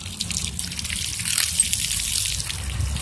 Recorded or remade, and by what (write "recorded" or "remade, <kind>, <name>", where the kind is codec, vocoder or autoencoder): recorded